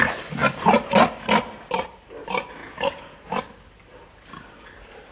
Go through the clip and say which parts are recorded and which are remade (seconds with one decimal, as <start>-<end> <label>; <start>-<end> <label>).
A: 0.0-2.6 recorded; 2.6-3.4 remade; 3.4-5.1 recorded